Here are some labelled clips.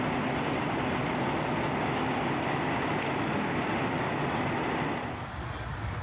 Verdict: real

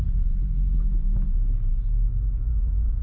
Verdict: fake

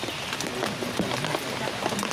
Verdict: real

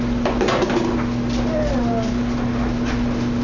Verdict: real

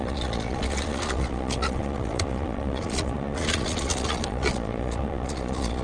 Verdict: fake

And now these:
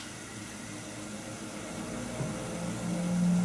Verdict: real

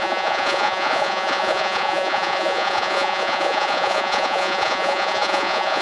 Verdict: fake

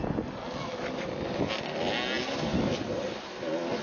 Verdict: real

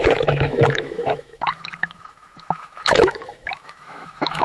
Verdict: fake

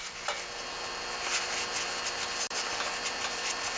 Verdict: real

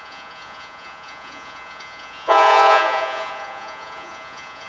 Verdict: fake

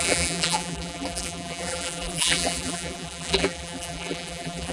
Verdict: fake